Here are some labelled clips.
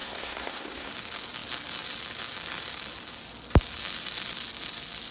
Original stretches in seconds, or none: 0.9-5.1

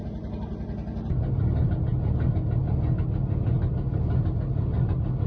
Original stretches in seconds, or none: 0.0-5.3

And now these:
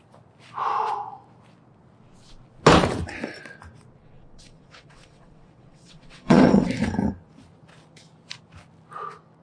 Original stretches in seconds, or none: 0.0-4.0; 6.7-9.4